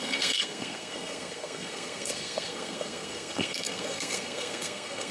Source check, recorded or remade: remade